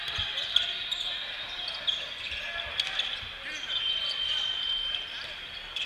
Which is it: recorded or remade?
recorded